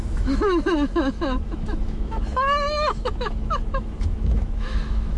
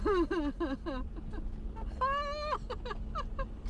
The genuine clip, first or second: second